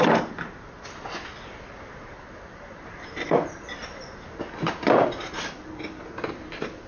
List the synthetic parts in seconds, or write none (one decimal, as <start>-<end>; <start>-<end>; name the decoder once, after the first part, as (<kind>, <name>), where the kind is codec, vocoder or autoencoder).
0.0-6.9 (vocoder, BigVGAN v2)